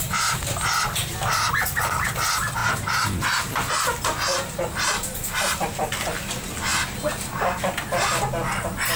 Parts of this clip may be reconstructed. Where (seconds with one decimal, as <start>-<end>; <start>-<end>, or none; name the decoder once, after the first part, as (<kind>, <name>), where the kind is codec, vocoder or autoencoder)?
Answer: 0.0-1.0 (vocoder, BigVGAN v2); 1.8-2.6; 3.7-6.7